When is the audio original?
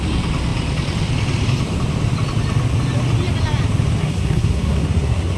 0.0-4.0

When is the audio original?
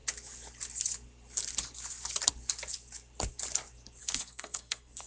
0.0-4.0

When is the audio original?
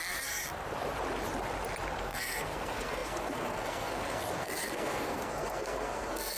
0.4-2.0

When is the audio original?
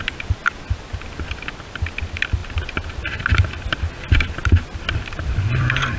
0.0-6.0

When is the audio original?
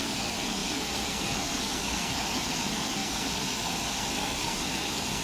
none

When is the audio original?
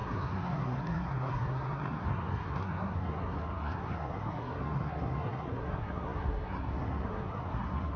none